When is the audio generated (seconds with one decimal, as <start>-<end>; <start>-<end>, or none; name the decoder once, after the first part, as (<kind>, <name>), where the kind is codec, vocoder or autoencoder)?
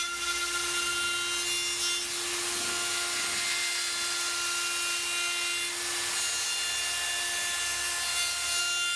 8.1-8.6 (vocoder, BigVGAN v2)